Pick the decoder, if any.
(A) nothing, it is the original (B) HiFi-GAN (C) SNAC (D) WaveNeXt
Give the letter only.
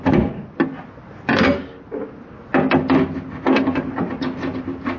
A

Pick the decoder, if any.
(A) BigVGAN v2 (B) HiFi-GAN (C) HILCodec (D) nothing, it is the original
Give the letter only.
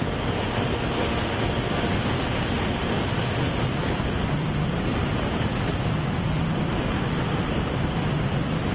D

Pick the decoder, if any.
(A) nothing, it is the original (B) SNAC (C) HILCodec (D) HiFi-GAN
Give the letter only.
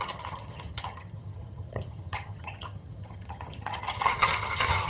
D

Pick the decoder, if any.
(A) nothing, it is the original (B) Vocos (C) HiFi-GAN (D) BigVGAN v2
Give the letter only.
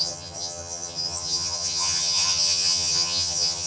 C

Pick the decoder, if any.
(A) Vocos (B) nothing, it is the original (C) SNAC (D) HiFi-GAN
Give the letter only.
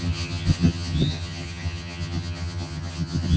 D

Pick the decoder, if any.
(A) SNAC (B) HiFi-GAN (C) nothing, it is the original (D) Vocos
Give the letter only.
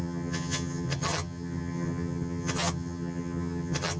B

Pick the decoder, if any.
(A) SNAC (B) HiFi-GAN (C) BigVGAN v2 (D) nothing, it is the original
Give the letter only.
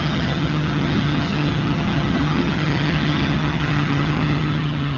B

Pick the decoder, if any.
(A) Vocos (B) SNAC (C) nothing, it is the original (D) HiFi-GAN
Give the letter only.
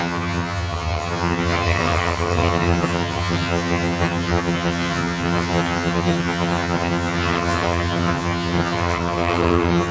D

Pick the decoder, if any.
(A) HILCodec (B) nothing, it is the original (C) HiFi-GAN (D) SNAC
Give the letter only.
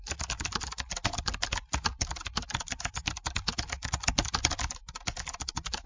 B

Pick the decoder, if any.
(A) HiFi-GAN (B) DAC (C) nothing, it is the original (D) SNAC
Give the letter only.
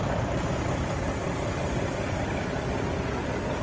C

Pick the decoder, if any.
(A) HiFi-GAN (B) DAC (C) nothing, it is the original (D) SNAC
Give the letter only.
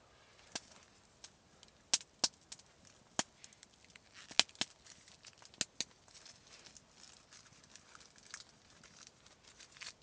C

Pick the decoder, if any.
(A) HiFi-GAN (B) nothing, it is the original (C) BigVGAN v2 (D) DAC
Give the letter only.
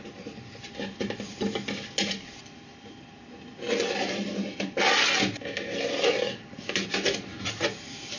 B